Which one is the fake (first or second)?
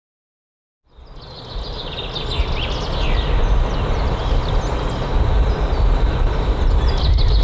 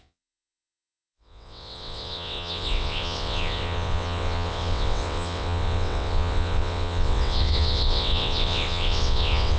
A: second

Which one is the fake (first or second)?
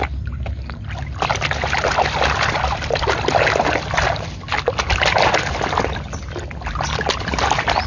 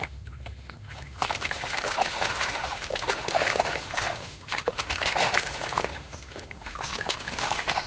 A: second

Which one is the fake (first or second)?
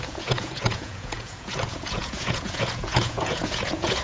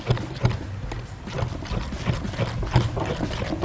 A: first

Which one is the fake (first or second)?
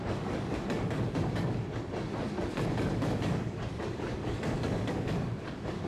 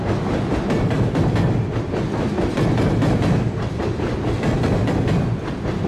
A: first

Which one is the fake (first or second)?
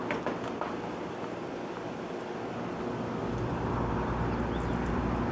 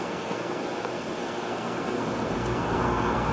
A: second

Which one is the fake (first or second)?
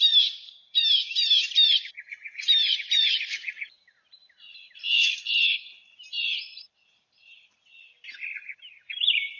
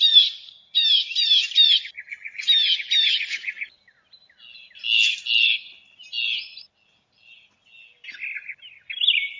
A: first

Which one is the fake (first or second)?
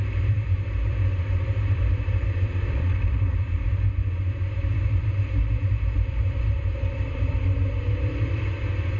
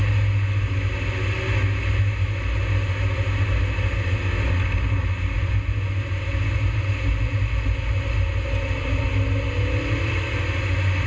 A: first